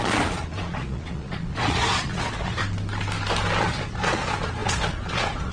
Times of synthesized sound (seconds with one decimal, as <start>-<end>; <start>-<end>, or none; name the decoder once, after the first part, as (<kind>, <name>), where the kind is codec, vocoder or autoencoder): 0.0-2.6 (vocoder, Vocos); 3.6-5.5